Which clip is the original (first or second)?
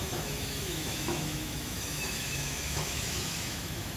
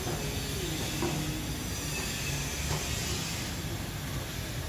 second